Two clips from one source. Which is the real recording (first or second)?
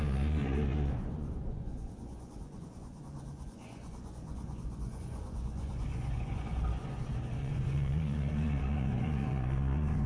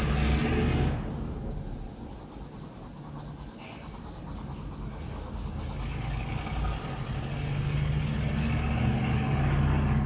second